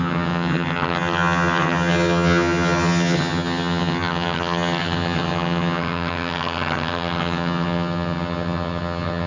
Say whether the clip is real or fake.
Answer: fake